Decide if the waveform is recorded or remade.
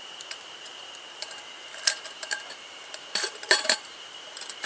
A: remade